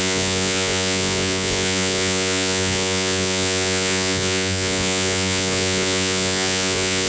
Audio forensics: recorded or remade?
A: remade